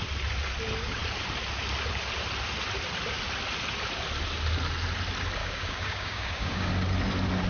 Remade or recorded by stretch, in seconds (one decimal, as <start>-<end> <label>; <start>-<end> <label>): 0.0-5.4 recorded; 5.4-6.7 remade; 6.7-7.5 recorded